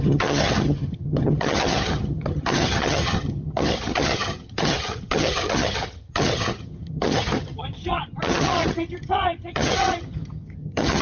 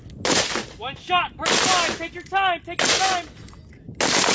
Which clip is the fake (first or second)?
first